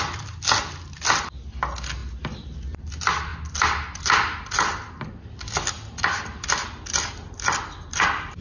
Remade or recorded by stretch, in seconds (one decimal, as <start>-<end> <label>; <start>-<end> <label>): 0.0-8.4 recorded